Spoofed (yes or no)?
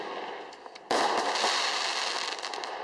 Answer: no